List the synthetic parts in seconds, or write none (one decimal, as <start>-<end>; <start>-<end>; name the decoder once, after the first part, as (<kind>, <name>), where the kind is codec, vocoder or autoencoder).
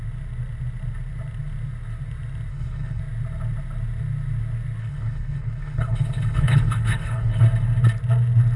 2.5-3.0 (codec, HILCodec); 4.8-7.4